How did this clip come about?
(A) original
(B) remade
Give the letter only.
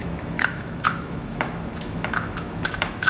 B